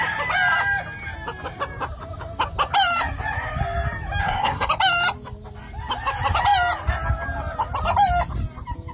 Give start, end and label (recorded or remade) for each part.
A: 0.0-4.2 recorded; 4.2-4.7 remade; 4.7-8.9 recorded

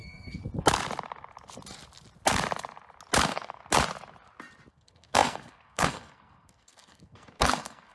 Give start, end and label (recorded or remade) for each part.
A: 0.0-0.4 remade; 0.4-3.2 recorded; 3.2-3.6 remade; 3.6-4.7 recorded; 4.7-7.9 remade